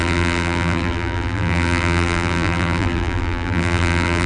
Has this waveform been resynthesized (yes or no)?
yes